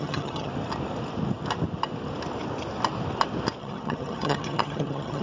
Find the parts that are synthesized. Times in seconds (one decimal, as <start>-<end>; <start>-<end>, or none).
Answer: 0.0-0.5; 3.6-5.2

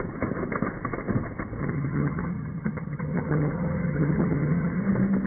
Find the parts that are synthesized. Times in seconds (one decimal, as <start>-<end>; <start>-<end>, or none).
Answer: 1.6-4.8

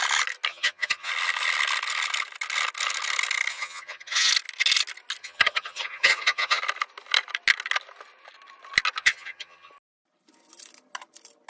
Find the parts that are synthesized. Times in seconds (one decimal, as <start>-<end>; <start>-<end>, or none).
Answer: 0.5-1.1; 3.5-4.3; 5.2-6.6; 9.0-9.7

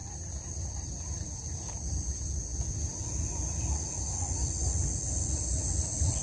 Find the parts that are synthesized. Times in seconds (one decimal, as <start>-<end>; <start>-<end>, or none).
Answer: none

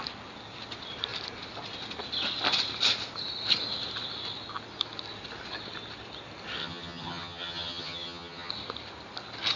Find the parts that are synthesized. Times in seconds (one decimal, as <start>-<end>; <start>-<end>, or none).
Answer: 6.6-8.5

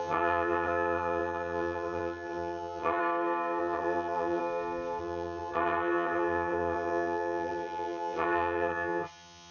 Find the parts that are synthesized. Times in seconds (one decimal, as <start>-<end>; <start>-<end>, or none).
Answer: 0.0-3.0; 3.6-4.4; 5.0-9.5